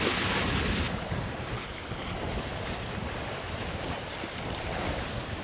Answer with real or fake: fake